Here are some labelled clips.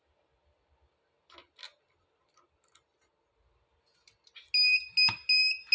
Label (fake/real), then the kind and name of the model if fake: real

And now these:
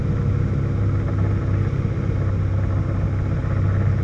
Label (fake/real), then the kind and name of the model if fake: real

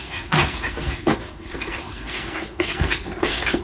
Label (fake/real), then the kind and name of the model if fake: fake, codec, SNAC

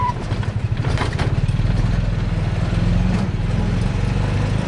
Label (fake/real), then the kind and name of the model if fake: real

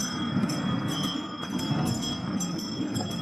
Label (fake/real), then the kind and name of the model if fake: fake, codec, SNAC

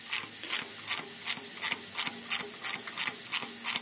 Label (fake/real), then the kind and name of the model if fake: real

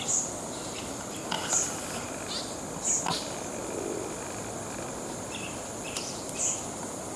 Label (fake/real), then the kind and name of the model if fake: real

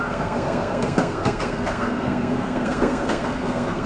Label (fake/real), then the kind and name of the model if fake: fake, codec, SNAC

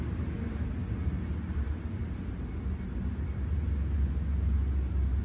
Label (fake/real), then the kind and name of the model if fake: real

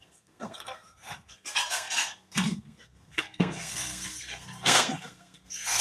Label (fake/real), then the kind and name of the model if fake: fake, codec, SNAC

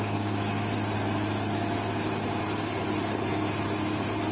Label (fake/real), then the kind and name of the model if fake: real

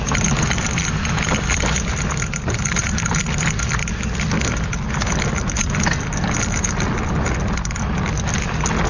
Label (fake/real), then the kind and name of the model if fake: real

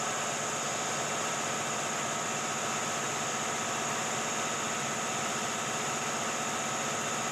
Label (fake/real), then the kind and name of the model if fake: real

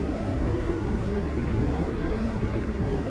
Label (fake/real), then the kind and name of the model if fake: fake, codec, SNAC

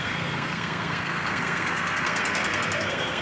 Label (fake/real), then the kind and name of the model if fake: fake, codec, SNAC